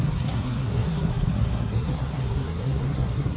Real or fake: fake